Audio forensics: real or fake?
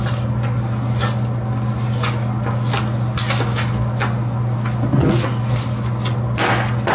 real